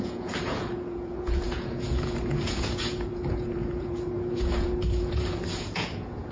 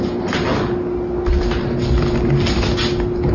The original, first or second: second